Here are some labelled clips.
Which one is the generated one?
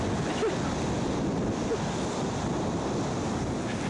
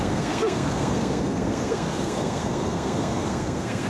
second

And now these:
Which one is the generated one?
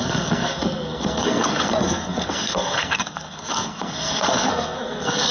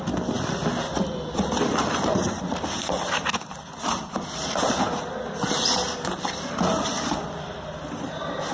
first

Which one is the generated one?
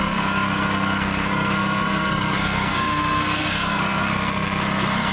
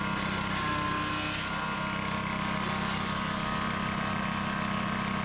first